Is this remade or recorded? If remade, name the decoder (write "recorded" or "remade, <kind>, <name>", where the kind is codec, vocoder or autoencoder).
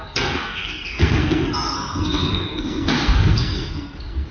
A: remade, codec, SNAC